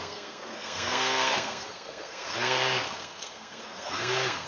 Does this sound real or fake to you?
fake